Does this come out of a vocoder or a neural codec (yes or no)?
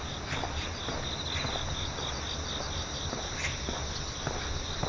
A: no